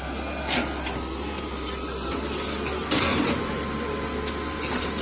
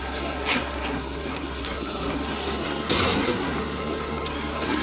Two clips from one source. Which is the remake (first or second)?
second